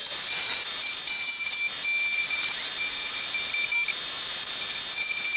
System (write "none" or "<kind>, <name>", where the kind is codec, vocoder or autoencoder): none